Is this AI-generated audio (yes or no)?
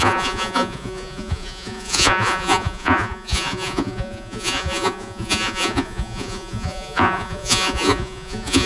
yes